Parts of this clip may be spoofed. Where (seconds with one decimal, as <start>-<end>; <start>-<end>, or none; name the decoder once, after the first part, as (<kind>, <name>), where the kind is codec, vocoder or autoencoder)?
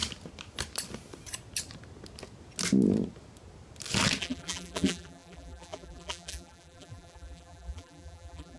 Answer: 4.2-8.6 (vocoder, BigVGAN v2)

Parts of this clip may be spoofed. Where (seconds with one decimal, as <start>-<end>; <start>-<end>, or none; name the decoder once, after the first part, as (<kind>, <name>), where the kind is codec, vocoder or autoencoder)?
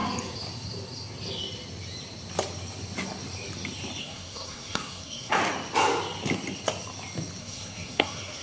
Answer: 4.0-5.4 (codec, SNAC); 7.4-8.4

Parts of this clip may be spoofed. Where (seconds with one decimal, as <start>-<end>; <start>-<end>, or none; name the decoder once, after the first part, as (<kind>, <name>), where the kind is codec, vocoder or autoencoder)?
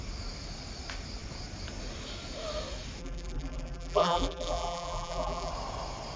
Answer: 3.0-5.5 (vocoder, BigVGAN v2)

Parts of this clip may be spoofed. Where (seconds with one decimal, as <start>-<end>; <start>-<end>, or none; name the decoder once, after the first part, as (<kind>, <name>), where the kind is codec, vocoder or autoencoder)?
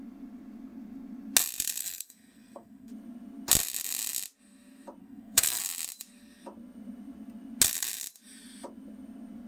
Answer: 1.8-2.9 (codec, SNAC); 5.0-5.6